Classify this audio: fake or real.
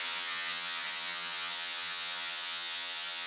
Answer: fake